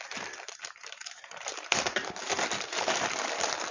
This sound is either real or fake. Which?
fake